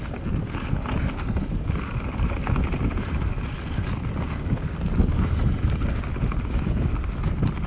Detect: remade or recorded recorded